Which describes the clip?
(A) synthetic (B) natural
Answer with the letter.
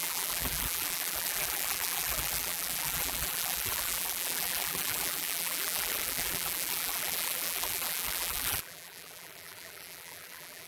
A